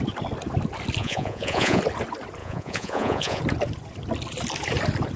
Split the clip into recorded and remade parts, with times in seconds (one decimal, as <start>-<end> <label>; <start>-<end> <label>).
0.0-1.0 recorded; 1.0-1.8 remade; 1.8-2.4 recorded; 2.4-3.4 remade; 3.4-5.2 recorded